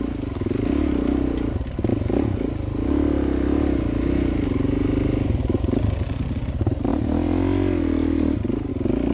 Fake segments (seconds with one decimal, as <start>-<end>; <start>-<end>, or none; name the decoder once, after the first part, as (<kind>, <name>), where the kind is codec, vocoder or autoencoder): none